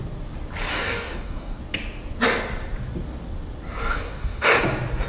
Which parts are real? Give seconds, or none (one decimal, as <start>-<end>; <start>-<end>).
0.0-0.7; 1.6-3.9; 4.6-5.1